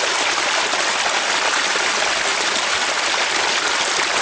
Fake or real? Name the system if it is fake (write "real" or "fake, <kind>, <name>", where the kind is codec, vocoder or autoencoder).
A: real